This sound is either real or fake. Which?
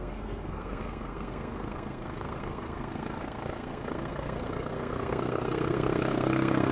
fake